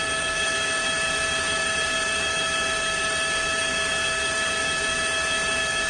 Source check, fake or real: fake